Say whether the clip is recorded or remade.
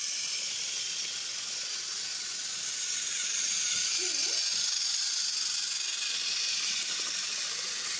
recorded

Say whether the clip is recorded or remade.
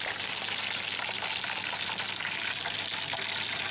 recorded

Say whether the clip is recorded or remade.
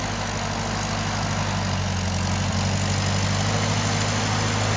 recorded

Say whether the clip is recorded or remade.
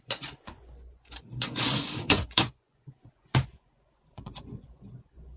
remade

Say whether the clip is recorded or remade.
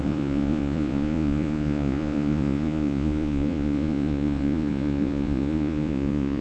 remade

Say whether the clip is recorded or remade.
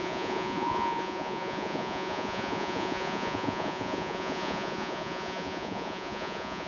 remade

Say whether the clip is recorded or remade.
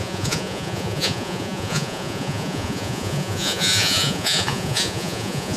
remade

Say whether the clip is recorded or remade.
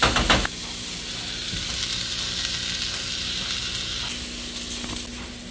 recorded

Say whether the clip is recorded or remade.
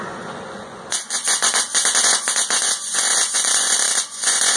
remade